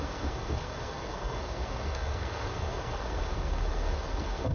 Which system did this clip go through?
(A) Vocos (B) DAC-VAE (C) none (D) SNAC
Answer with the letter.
D